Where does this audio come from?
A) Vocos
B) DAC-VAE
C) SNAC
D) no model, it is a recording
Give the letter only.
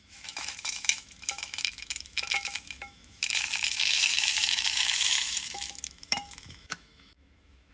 B